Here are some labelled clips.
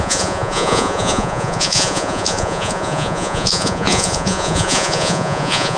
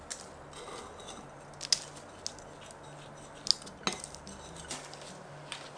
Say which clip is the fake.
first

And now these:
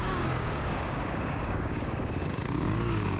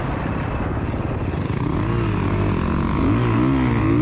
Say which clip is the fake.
first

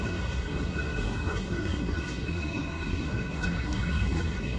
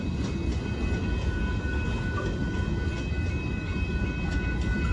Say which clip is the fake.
first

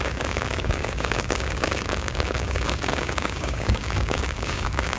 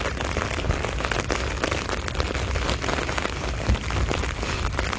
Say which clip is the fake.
first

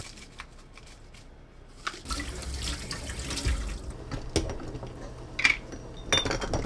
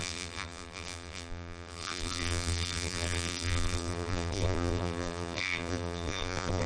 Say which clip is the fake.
second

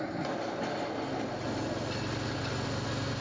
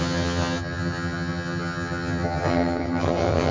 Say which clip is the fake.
second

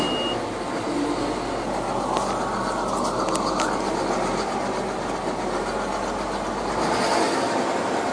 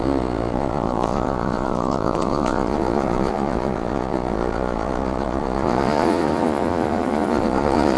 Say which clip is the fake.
second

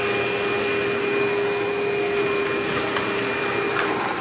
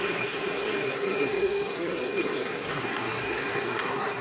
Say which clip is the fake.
second